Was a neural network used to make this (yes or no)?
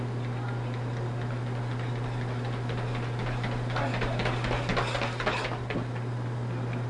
no